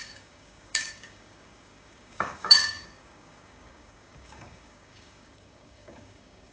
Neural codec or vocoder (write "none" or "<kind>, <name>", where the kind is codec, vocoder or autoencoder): codec, DAC